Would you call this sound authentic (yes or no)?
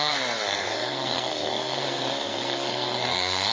no